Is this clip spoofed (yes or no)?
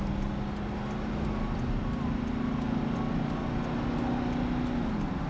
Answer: no